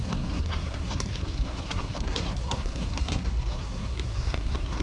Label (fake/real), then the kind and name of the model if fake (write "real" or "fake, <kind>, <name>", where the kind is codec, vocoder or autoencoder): fake, codec, SNAC